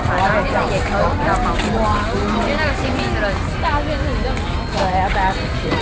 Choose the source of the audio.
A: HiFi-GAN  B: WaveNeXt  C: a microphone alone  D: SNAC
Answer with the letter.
C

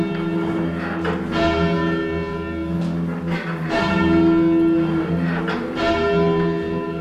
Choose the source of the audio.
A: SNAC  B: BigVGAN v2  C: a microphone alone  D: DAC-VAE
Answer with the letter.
C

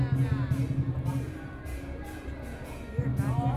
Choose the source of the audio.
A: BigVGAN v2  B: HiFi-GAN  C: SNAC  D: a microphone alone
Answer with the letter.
D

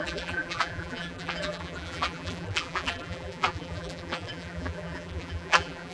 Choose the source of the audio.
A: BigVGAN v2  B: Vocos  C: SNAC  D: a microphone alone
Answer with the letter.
A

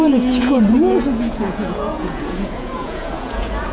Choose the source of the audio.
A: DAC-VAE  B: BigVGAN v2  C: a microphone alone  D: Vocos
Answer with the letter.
D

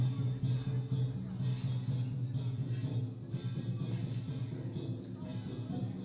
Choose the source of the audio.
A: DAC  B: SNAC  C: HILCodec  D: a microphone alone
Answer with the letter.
D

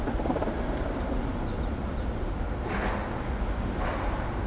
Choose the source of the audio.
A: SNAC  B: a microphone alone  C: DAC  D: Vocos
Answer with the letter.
B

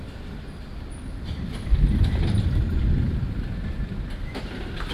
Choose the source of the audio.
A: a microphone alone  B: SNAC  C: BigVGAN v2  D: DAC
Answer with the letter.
A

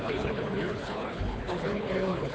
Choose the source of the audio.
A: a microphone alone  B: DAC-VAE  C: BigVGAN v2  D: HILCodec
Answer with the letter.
D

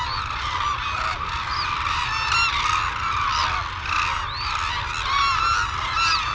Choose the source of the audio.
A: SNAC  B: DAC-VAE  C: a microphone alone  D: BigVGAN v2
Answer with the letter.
C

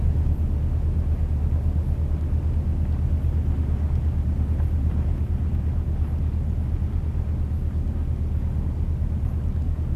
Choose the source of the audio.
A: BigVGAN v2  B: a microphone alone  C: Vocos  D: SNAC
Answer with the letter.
B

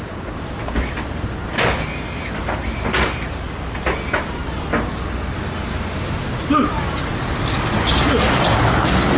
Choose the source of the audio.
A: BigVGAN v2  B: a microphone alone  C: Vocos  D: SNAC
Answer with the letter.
B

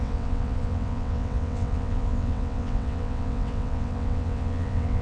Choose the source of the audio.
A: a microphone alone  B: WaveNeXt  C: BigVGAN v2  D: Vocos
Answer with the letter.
B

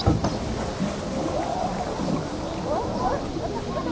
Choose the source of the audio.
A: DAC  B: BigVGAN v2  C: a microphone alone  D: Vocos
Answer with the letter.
C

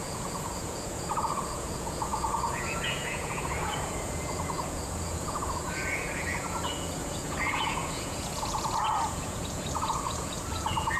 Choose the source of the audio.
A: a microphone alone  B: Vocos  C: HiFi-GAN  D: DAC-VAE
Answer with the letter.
B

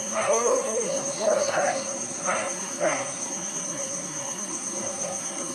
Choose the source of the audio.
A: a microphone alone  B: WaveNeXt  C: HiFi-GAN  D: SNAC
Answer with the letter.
D